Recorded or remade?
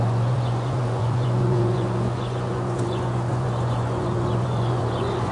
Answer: remade